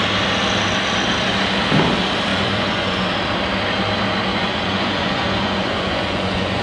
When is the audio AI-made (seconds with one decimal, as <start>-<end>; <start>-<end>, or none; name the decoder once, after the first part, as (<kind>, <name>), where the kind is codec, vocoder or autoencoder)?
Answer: 2.3-3.0 (vocoder, Vocos); 4.3-6.6